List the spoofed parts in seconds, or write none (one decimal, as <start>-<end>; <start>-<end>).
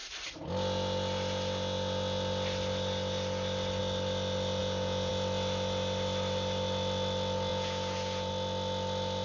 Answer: 4.6-5.1; 7.5-8.3